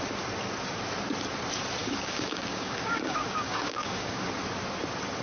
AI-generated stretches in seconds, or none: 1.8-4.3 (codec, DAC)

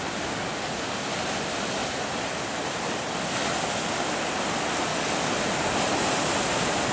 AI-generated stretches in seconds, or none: 4.9-5.4 (codec, DAC)